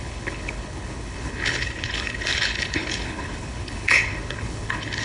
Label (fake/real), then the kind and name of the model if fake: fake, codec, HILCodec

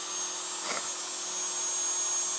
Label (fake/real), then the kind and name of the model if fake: real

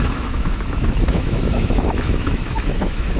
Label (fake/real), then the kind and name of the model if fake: fake, autoencoder, DAC-VAE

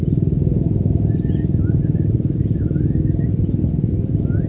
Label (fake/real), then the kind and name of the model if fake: real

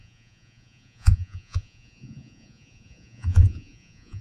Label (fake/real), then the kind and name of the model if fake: fake, vocoder, Vocos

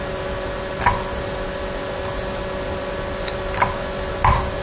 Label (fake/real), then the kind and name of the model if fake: real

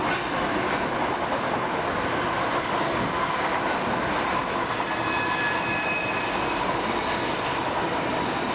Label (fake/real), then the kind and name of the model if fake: real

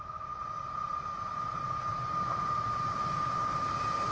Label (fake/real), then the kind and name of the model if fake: fake, vocoder, BigVGAN v2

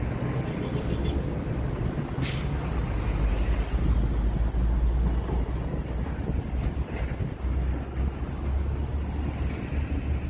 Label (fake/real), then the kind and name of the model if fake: real